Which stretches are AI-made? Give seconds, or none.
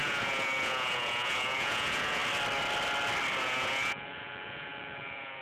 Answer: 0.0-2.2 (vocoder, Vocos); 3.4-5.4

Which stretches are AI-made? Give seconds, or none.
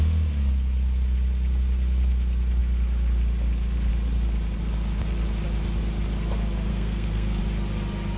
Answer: 6.7-7.4 (codec, SNAC)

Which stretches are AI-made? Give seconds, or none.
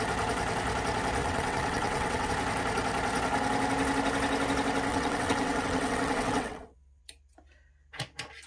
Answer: 1.2-2.3 (vocoder, WaveNeXt); 4.9-7.0